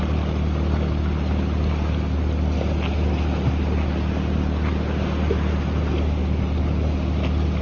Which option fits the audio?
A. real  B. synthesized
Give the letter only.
A